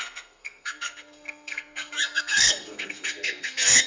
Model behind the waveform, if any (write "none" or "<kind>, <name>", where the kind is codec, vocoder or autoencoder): codec, SNAC